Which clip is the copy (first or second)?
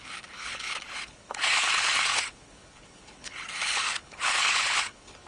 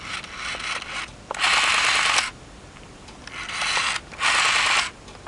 first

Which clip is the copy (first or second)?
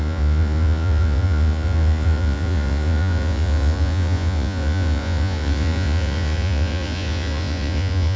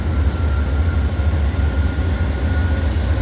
first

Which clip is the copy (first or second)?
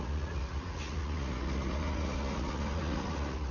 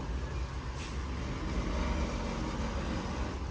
first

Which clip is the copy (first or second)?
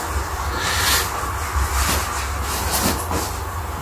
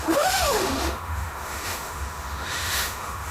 second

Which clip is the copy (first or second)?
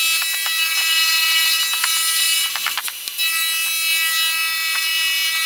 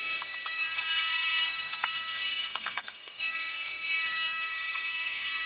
second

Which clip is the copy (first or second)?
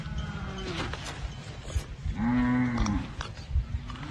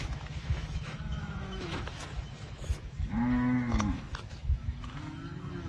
second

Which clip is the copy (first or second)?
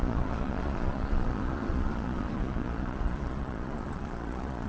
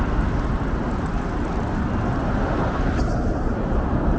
first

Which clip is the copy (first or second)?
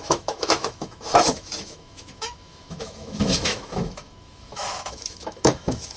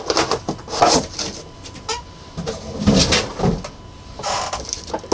first